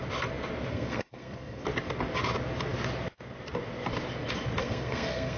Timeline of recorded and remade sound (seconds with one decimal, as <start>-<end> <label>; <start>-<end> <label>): 0.0-0.7 recorded; 0.7-1.7 remade; 1.7-4.6 recorded; 4.6-5.4 remade